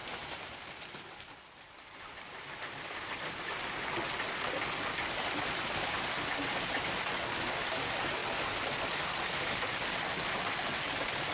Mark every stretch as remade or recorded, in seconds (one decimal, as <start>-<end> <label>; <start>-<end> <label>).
0.0-11.3 recorded